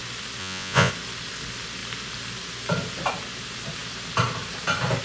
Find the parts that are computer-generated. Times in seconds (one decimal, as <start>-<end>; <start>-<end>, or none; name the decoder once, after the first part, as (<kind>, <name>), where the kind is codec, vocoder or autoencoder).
0.4-0.9 (vocoder, Vocos)